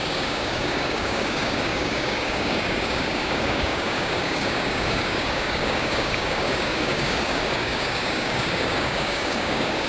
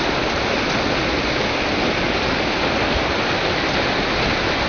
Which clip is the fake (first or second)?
first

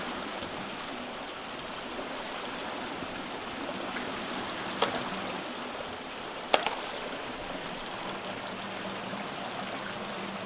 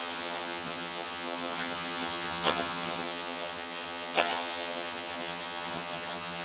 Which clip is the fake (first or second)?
second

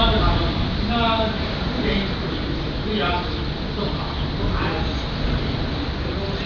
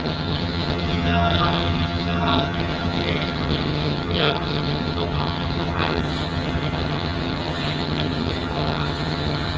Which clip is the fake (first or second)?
second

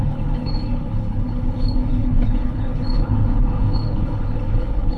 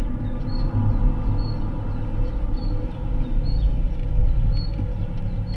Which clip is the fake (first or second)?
first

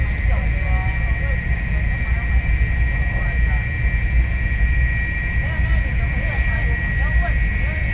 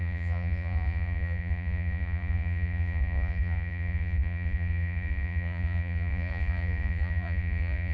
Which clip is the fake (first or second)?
second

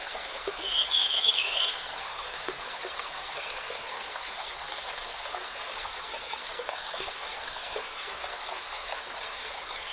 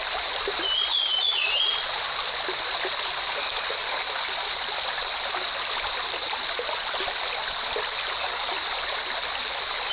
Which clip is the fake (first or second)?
first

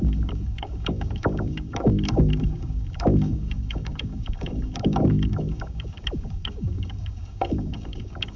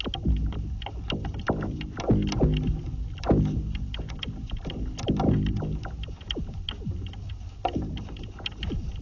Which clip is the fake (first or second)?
first